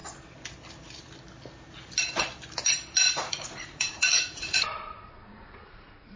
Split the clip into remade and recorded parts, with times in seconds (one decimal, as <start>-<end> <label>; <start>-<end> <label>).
0.0-3.3 recorded; 3.3-6.2 remade